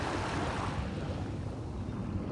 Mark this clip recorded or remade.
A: recorded